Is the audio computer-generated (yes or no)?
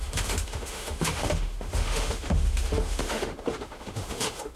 yes